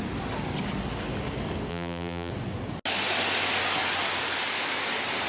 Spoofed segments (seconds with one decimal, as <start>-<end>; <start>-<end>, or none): 1.7-2.3